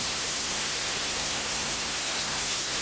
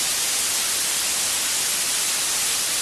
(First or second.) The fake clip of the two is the first